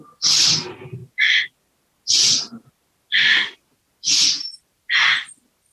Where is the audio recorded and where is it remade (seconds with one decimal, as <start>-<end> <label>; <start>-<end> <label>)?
0.0-5.7 recorded